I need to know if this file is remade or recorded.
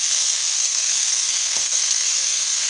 remade